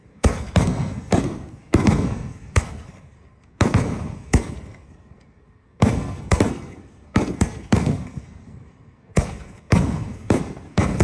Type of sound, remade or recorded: remade